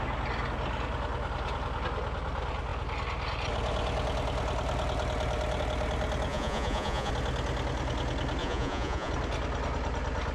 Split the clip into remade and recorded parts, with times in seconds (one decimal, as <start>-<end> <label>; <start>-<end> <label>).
0.0-6.3 recorded; 6.3-7.1 remade; 7.1-8.4 recorded; 8.4-9.1 remade; 9.1-10.3 recorded